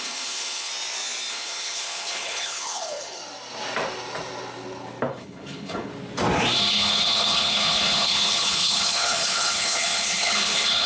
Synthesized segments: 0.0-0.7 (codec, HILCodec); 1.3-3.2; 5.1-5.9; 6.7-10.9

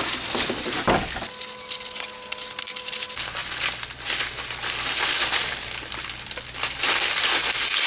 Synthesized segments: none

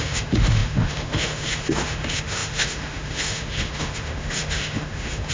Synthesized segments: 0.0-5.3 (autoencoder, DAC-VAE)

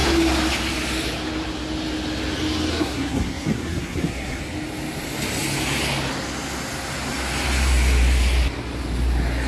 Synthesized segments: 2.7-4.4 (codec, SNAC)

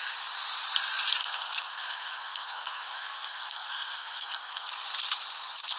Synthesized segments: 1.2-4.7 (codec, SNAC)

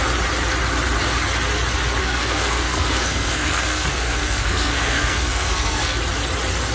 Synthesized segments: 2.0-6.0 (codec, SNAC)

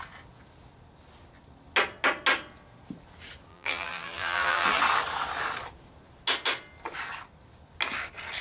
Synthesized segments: 3.5-4.8 (vocoder, BigVGAN v2)

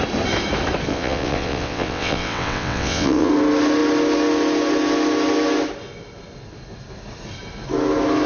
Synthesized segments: 0.9-3.3 (vocoder, WaveNeXt)